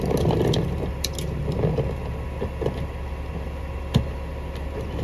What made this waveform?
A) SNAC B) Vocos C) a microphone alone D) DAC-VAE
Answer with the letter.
C